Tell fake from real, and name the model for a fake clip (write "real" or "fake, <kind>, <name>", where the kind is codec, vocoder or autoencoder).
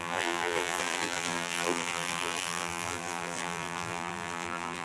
fake, vocoder, BigVGAN v2